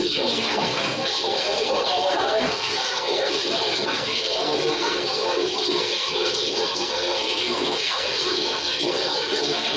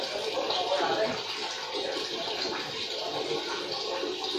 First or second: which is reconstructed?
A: first